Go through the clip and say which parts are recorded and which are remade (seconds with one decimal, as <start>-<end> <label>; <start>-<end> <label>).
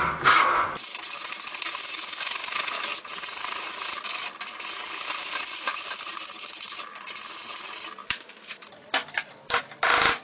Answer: 0.0-5.7 recorded; 5.7-6.3 remade; 6.3-8.0 recorded; 8.0-8.5 remade; 8.5-10.2 recorded